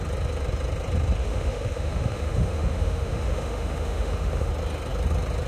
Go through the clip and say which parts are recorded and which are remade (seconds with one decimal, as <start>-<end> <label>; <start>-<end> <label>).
0.0-1.2 recorded; 1.2-4.5 remade; 4.5-5.5 recorded